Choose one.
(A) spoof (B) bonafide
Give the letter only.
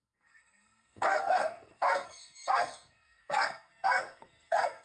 A